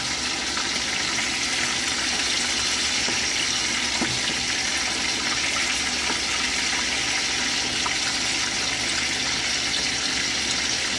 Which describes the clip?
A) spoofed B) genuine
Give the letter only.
B